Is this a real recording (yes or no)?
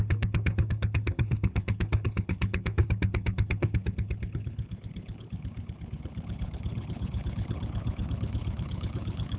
no